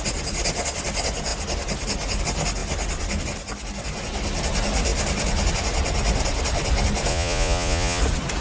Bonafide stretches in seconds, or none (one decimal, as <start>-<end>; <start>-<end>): 0.0-7.1; 8.0-8.4